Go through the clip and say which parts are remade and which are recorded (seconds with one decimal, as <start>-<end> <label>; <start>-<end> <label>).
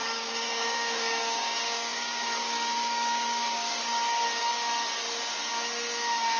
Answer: 0.0-3.8 remade; 3.8-6.4 recorded